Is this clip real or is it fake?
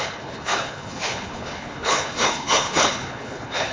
fake